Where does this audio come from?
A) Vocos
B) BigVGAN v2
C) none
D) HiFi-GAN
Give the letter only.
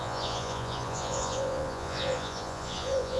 A